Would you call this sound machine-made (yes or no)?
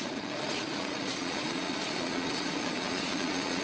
yes